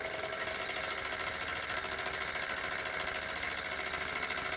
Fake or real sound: real